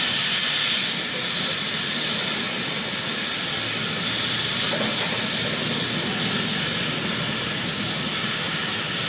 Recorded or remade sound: recorded